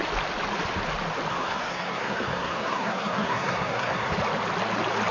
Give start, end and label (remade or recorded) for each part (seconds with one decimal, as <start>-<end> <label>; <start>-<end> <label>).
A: 0.0-1.3 recorded; 1.3-4.1 remade; 4.1-5.1 recorded